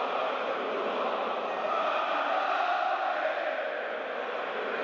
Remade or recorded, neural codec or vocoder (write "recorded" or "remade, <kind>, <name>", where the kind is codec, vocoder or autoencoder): recorded